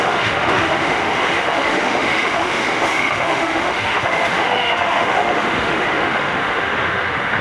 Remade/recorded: remade